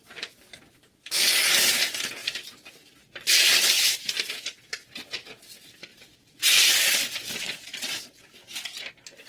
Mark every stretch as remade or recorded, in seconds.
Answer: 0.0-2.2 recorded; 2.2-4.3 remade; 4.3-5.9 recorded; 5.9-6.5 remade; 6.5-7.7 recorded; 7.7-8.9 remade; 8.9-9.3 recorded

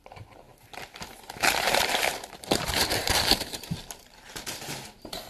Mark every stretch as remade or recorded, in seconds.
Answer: 0.0-0.5 remade; 0.5-1.4 recorded; 1.4-5.3 remade